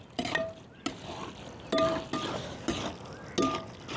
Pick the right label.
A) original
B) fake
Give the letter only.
A